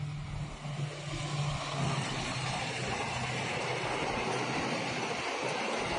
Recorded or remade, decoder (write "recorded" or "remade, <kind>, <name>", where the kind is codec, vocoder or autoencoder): recorded